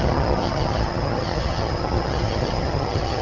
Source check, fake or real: fake